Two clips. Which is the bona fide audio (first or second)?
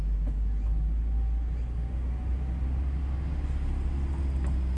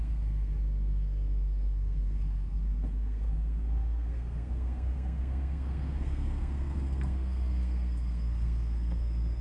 first